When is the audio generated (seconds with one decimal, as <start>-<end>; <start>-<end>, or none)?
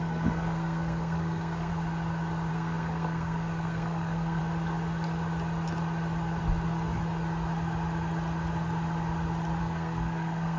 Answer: 0.0-1.7; 2.5-4.4; 9.6-10.6